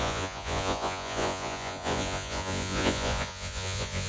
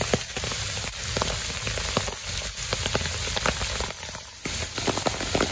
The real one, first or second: second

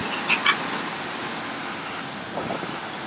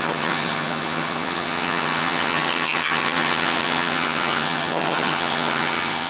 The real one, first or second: first